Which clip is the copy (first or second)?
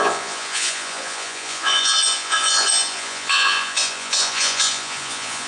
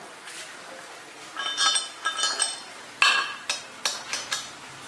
first